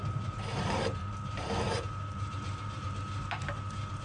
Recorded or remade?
remade